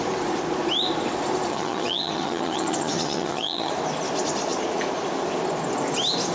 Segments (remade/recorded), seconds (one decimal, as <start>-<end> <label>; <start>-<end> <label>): 0.0-1.5 recorded; 1.5-3.7 remade; 3.7-6.3 recorded